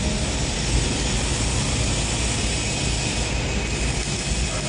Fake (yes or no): no